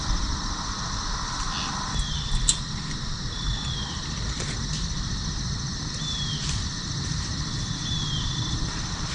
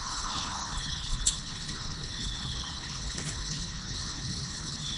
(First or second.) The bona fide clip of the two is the first